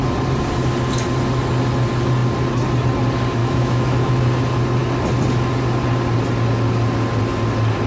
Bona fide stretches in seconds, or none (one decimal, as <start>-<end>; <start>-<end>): 0.0-3.4; 4.1-7.9